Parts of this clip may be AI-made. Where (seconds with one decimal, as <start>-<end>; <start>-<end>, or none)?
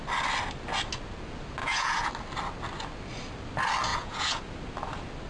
1.6-2.1; 3.9-4.4